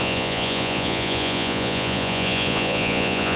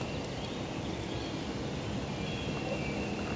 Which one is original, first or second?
second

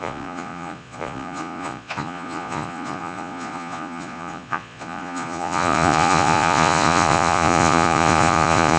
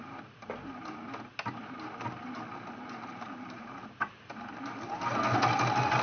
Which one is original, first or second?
second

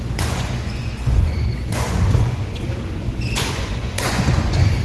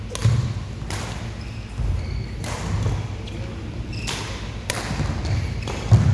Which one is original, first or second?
second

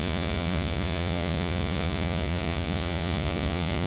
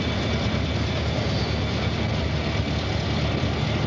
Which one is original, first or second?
second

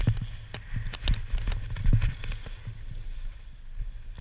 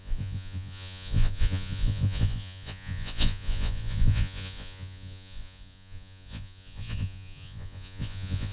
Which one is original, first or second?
first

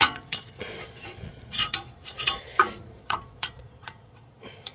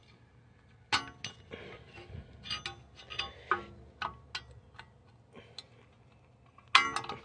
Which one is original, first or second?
second